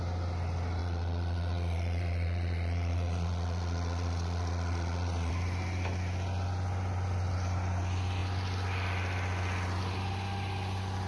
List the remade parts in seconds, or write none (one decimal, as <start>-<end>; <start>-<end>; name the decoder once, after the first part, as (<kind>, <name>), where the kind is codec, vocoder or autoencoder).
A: 0.8-5.3 (vocoder, Vocos)